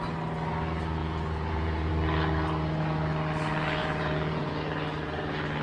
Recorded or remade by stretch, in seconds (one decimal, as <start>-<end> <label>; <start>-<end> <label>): 0.0-1.0 recorded; 1.0-1.9 remade; 1.9-3.8 recorded; 3.8-4.5 remade; 4.5-5.6 recorded

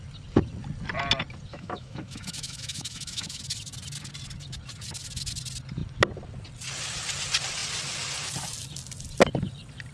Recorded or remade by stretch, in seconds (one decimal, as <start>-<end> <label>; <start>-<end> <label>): 0.0-1.5 recorded; 1.5-3.4 remade; 3.4-9.9 recorded

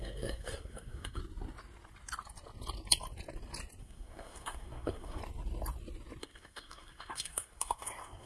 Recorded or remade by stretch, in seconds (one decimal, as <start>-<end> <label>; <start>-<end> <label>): 0.0-1.2 remade; 1.2-3.8 recorded; 3.8-5.2 remade; 5.2-6.2 recorded; 6.2-8.3 remade

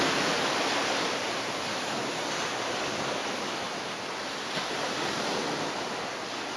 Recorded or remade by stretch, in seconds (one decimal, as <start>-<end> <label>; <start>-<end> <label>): 0.0-1.7 recorded; 1.7-2.2 remade; 2.2-3.2 recorded; 3.2-4.0 remade; 4.0-6.6 recorded

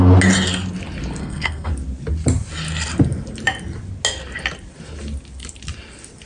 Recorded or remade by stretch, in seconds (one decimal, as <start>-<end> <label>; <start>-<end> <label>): 0.0-1.2 recorded; 1.2-1.7 remade; 1.7-6.3 recorded

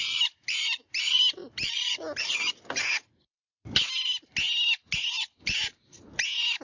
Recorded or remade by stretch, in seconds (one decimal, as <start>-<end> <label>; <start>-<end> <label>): 0.0-6.6 recorded

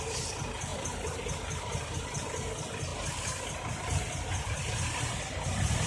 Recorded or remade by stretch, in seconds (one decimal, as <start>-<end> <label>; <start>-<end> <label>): 0.0-5.9 recorded